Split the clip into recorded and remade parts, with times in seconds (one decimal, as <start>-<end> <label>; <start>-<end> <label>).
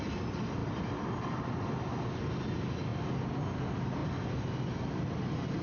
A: 0.0-5.6 recorded